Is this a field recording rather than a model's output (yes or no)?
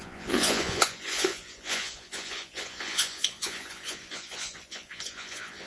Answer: no